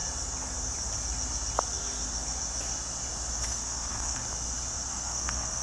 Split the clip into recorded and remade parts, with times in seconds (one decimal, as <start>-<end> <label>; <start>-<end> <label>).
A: 0.0-3.4 recorded; 3.4-4.2 remade; 4.2-4.9 recorded; 4.9-5.6 remade